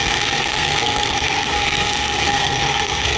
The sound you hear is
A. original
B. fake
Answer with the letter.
B